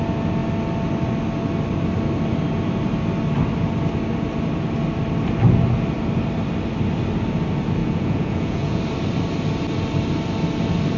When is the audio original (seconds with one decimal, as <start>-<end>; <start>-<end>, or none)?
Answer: 0.0-7.8; 8.8-11.0